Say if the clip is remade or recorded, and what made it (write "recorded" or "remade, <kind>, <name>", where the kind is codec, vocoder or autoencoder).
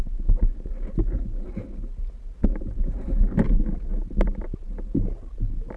recorded